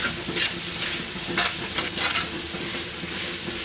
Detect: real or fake real